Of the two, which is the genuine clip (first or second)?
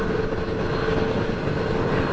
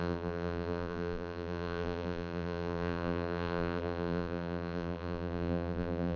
first